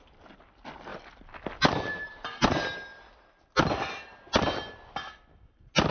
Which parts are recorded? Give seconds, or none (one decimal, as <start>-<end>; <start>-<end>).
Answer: 0.0-5.9